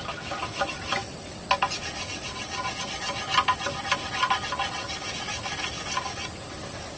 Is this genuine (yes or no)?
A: yes